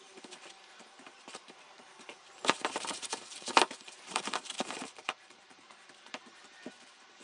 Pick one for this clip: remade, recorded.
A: remade